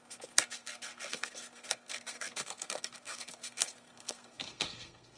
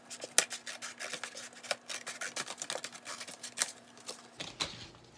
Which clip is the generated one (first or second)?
first